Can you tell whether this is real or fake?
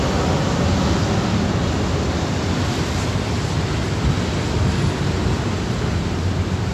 real